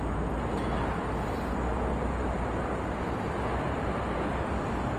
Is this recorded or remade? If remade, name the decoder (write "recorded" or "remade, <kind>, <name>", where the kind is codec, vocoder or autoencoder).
recorded